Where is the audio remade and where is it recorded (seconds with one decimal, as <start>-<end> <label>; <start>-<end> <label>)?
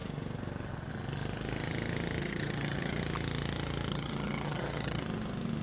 0.0-2.2 recorded; 2.2-3.0 remade; 3.0-3.9 recorded; 3.9-5.0 remade; 5.0-5.6 recorded